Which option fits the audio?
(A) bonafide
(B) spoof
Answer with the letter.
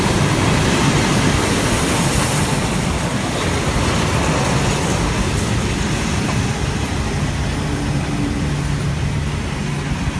A